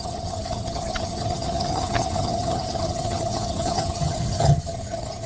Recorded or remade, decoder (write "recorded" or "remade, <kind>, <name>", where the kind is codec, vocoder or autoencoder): remade, vocoder, HiFi-GAN